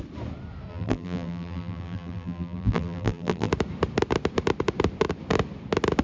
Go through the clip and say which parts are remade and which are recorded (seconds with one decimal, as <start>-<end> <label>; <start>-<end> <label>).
0.0-0.7 recorded; 0.7-3.5 remade; 3.5-6.0 recorded